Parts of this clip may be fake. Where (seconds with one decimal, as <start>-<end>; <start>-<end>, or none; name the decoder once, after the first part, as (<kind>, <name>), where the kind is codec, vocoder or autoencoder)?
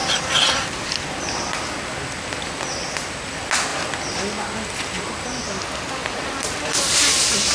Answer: 0.0-1.8 (vocoder, BigVGAN v2); 6.0-6.8